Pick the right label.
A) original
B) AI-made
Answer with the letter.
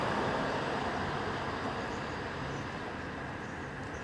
A